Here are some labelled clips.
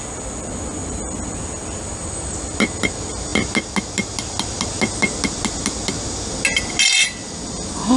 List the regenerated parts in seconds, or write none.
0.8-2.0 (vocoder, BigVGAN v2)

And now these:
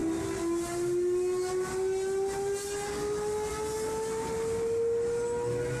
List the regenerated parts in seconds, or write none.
none

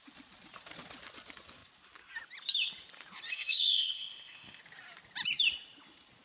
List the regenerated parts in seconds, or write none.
3.3-4.6 (codec, ZipCodec)

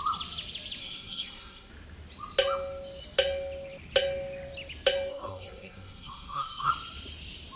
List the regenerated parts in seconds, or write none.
0.8-1.7 (codec, SNAC); 5.1-6.7

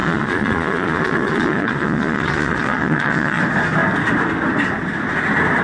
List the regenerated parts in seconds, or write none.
0.0-3.4 (vocoder, Vocos)